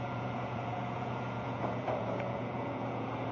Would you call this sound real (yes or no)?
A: no